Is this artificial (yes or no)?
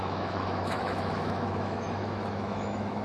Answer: yes